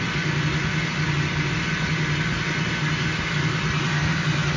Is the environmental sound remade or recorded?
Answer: recorded